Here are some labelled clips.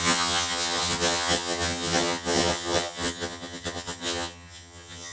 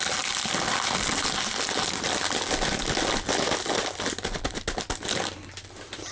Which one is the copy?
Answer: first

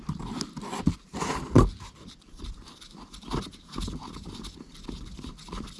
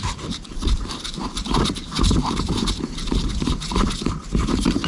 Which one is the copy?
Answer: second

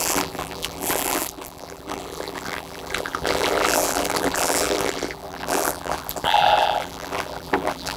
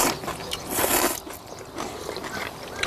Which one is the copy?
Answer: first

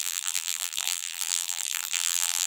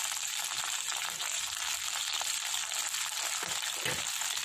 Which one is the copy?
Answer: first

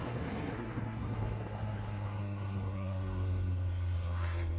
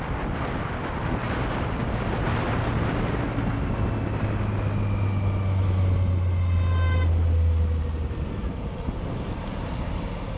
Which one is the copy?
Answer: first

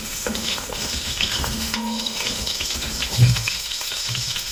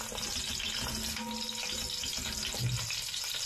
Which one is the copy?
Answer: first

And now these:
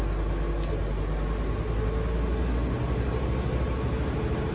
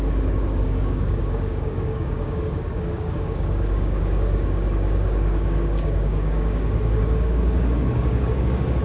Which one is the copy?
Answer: second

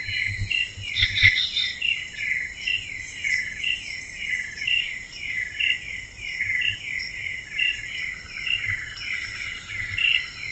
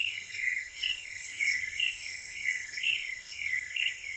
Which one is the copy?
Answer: second